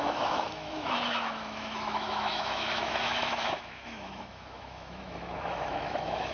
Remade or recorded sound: remade